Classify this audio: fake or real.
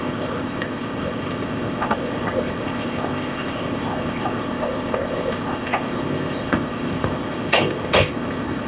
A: fake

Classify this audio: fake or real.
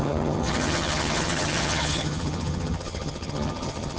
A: fake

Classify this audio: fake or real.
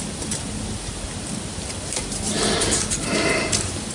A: real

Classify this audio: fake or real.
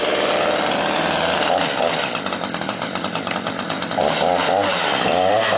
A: real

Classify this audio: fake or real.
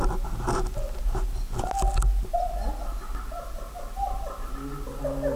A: real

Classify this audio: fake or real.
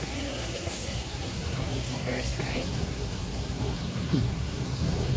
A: fake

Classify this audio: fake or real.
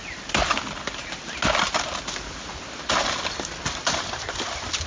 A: real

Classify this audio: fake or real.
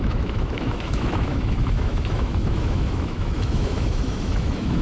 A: fake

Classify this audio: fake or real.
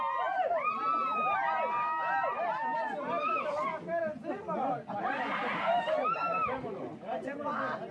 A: real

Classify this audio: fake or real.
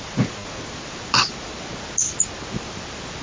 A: real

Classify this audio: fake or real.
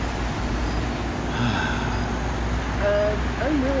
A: real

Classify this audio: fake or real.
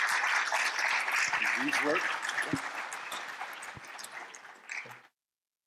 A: real